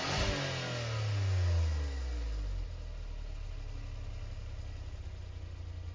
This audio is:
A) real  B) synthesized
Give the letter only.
A